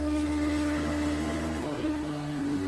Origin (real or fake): fake